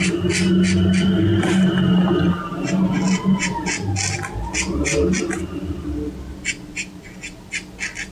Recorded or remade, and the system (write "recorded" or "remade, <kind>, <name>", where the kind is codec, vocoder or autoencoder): recorded